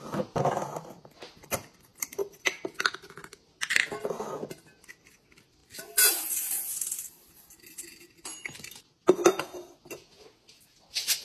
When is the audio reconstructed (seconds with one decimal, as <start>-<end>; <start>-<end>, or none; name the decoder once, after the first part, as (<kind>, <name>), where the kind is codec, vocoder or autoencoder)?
none